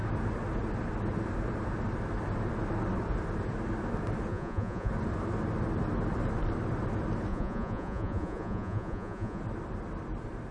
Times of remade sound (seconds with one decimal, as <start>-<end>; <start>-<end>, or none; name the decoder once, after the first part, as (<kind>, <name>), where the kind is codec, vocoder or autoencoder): 4.3-4.9 (vocoder, Vocos); 7.3-9.4